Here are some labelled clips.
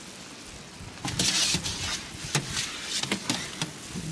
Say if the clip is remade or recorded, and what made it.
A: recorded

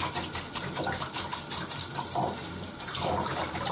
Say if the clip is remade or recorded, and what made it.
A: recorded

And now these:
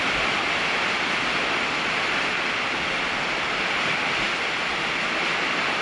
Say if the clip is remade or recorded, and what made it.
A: recorded